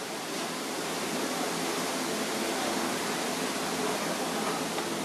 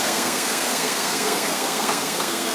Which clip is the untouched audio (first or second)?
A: first